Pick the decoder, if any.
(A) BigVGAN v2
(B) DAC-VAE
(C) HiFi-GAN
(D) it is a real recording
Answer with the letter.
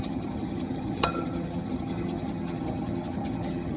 C